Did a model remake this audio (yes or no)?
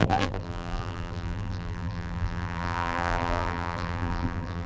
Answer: yes